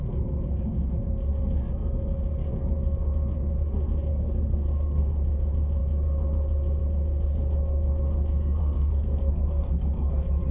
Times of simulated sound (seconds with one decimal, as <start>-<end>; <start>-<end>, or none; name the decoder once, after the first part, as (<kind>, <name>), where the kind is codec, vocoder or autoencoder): 4.1-5.0 (codec, SNAC); 8.6-10.1